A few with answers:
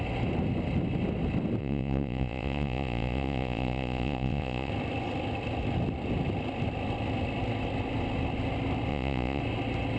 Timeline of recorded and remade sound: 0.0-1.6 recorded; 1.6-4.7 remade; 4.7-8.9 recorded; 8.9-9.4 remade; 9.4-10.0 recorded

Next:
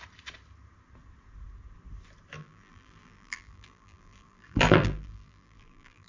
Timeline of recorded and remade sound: 0.0-2.4 recorded; 2.4-6.1 remade

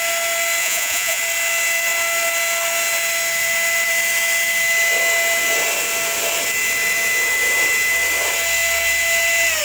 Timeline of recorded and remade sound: 0.0-0.6 recorded; 0.6-1.2 remade; 1.2-9.6 recorded